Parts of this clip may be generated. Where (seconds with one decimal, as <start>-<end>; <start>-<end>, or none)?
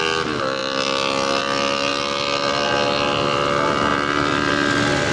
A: 1.9-2.7; 3.9-4.5